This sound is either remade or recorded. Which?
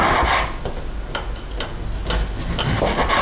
recorded